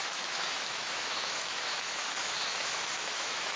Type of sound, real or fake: fake